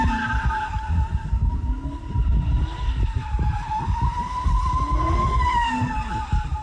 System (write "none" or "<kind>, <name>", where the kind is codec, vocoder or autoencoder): none